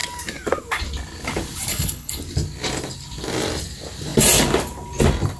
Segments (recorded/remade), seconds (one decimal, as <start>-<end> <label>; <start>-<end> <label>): 0.0-1.7 recorded; 1.7-2.2 remade; 2.2-5.4 recorded